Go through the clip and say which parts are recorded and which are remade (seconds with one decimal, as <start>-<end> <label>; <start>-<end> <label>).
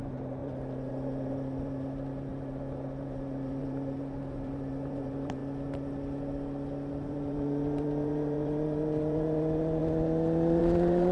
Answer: 0.0-0.4 remade; 0.4-0.9 recorded; 0.9-5.4 remade; 5.4-6.9 recorded; 6.9-9.8 remade; 9.8-10.6 recorded; 10.6-11.1 remade